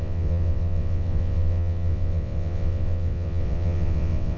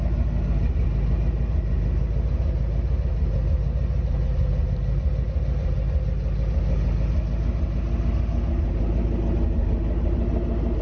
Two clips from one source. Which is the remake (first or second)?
first